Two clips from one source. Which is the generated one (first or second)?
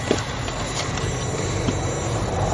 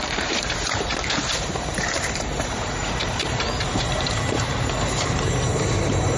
second